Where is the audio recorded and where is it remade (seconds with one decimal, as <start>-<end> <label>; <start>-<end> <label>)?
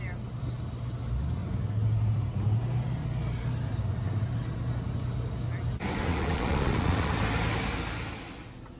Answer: 0.0-6.1 recorded; 6.1-7.1 remade; 7.1-8.8 recorded